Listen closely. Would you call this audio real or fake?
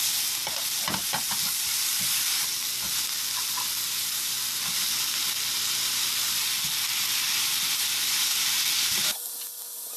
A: real